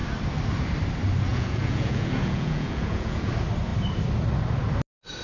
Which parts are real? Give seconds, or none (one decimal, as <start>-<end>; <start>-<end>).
0.0-1.3; 3.3-5.2